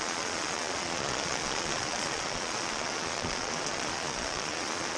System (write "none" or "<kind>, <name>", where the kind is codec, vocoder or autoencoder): vocoder, Vocos